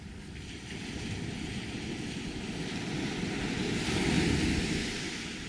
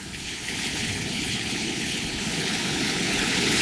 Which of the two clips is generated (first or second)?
second